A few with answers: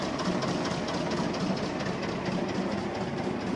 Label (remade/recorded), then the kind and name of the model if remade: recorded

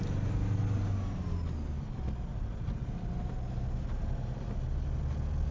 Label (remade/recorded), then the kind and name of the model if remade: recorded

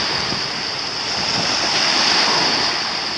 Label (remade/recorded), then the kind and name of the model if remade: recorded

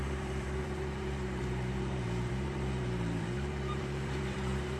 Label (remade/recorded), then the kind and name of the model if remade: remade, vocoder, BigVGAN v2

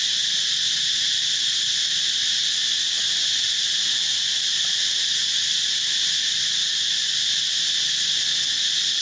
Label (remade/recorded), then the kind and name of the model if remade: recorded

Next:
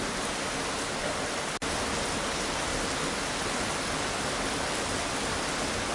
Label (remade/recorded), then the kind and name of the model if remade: recorded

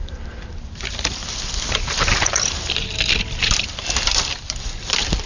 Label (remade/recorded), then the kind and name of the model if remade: remade, vocoder, BigVGAN v2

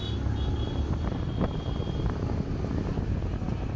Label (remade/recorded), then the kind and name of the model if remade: recorded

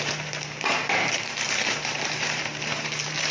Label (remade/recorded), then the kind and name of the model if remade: remade, vocoder, BigVGAN v2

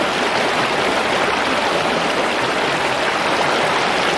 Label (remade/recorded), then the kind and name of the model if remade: recorded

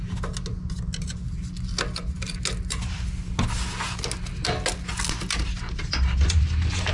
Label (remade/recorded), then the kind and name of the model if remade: recorded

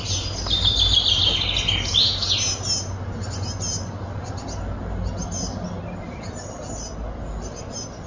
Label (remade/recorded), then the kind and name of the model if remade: recorded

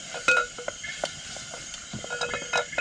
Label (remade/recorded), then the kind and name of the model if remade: recorded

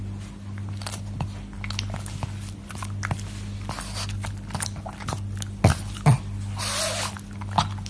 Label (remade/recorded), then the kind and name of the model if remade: recorded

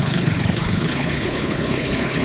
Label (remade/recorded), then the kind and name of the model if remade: remade, codec, HILCodec